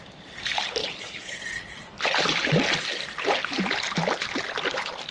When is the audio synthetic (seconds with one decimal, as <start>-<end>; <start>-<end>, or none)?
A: 0.8-1.4